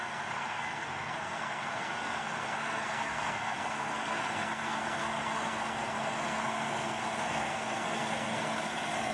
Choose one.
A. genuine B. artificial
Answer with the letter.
B